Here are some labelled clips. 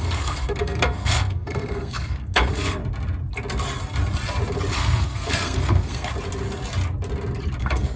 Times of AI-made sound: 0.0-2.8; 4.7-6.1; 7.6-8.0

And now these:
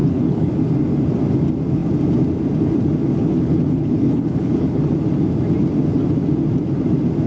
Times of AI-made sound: 0.0-0.5; 3.3-4.8